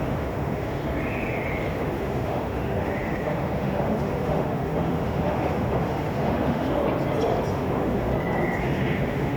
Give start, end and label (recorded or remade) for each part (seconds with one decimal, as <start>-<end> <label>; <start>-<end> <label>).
0.0-0.8 remade; 0.8-1.7 recorded; 1.7-6.8 remade; 6.8-7.5 recorded; 7.5-8.1 remade; 8.1-8.6 recorded; 8.6-9.4 remade